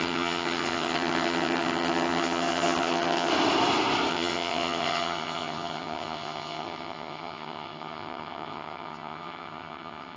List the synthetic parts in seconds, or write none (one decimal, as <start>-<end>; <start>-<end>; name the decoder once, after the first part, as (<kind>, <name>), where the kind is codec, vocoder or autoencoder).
0.0-3.3 (vocoder, HiFi-GAN); 4.1-10.2